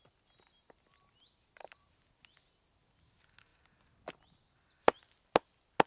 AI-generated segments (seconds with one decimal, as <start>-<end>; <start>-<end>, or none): none